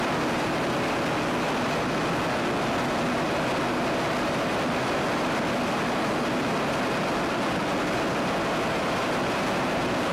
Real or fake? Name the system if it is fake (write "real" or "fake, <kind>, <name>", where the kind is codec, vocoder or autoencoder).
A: real